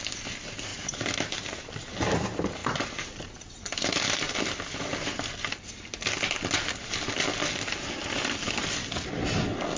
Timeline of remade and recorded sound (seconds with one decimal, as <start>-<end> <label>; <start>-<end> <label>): 0.0-0.7 recorded; 0.7-1.7 remade; 1.7-2.6 recorded; 2.6-4.5 remade; 4.5-8.0 recorded; 8.0-8.5 remade; 8.5-9.8 recorded